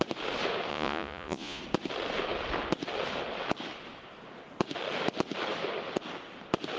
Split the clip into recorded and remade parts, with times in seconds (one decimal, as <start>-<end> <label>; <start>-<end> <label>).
0.0-0.7 recorded; 0.7-1.6 remade; 1.6-6.8 recorded